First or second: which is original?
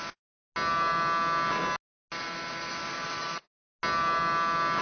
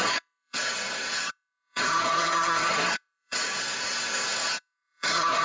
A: first